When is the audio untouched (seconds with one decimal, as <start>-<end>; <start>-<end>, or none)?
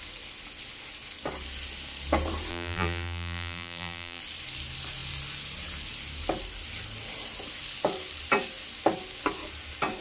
0.0-2.5; 4.2-10.0